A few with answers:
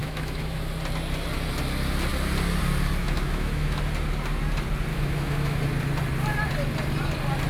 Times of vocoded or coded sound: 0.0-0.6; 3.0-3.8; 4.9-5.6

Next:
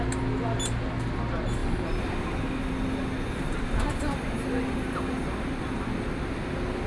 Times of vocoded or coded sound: none

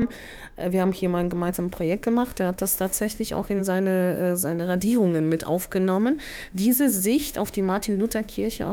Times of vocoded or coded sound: 1.5-8.7